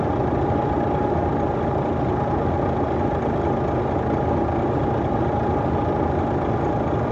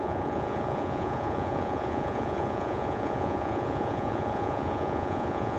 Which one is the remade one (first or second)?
second